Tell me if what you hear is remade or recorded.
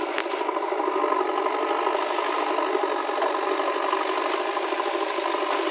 recorded